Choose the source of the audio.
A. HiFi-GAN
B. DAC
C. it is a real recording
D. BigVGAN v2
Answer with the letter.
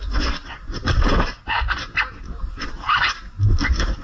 D